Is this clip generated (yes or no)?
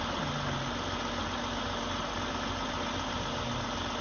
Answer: no